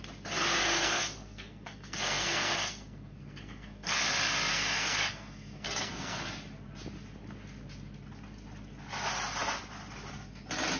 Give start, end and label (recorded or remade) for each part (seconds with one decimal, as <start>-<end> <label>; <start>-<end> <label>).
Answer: 0.0-0.6 recorded; 0.6-4.0 remade; 4.0-4.5 recorded; 4.5-6.2 remade; 6.2-10.8 recorded